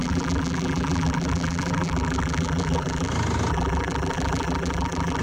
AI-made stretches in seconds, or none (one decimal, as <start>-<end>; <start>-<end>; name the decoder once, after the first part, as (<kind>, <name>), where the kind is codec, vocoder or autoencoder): 0.0-3.1 (vocoder, BigVGAN v2); 3.5-5.2